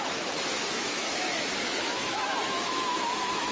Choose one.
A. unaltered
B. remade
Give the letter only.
B